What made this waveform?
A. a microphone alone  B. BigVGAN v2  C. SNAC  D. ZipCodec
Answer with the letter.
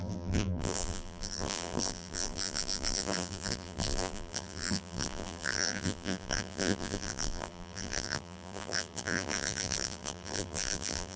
B